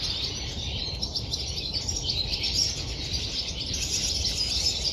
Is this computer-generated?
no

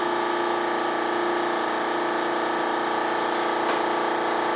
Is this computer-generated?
no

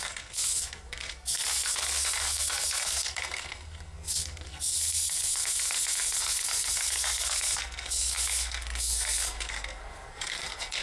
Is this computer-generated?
yes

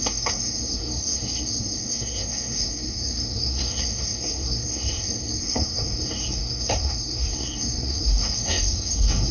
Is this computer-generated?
yes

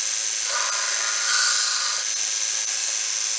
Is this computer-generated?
no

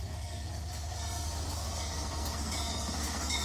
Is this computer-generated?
yes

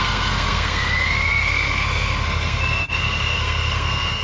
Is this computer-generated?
yes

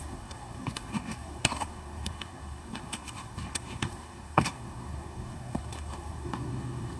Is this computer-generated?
yes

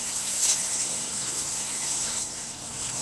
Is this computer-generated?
yes